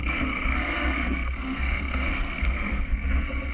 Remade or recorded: remade